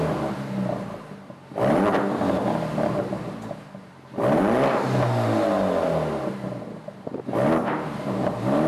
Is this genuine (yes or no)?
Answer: yes